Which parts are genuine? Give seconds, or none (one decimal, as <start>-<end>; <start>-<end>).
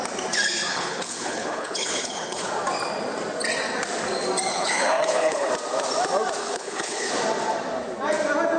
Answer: 0.0-0.7; 2.5-4.5; 5.5-6.4; 7.1-8.6